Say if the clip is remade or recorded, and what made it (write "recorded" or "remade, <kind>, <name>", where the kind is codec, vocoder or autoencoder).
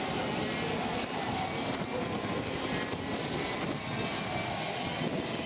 recorded